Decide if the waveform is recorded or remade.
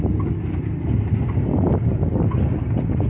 recorded